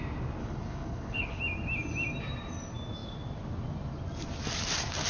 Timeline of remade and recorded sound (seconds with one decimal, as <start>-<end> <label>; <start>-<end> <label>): 0.0-0.4 recorded; 0.4-1.4 remade; 1.4-5.1 recorded